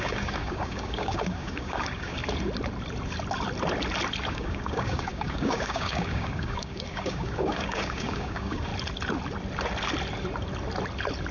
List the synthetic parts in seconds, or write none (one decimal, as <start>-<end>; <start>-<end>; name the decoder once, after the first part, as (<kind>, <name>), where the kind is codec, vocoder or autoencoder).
0.0-2.2 (codec, DAC); 4.3-8.7